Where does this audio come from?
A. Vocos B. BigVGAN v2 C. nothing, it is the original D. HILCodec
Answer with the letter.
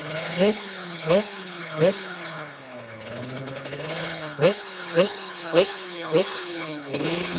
D